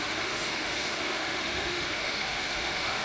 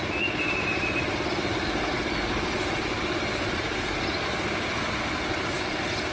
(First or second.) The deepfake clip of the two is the first